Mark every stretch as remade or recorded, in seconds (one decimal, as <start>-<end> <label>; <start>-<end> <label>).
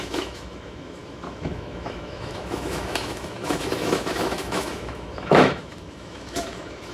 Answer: 0.0-6.9 remade